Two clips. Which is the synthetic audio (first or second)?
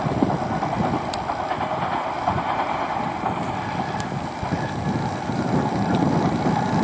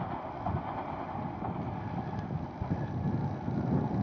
first